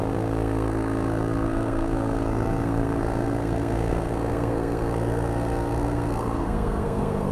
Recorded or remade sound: remade